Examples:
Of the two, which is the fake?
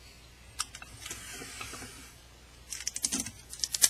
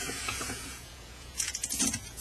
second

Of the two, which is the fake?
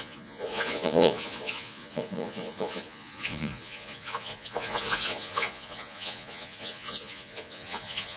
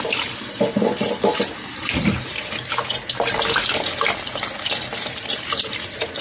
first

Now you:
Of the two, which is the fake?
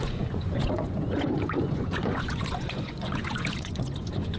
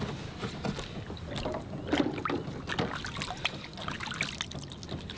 first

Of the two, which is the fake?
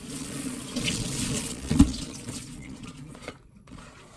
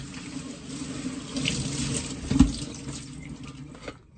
first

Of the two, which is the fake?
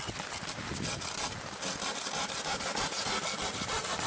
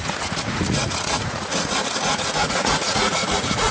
second